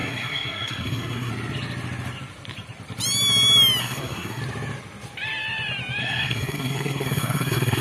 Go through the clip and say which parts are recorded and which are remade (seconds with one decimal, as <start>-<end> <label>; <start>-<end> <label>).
0.0-1.3 remade; 1.3-3.8 recorded; 3.8-4.4 remade; 4.4-6.0 recorded; 6.0-7.8 remade